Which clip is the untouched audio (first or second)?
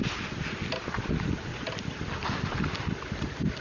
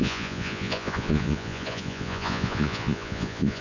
first